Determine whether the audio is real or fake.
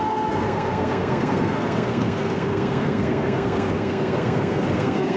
fake